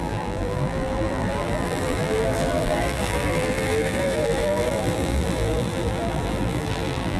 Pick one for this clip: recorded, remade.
remade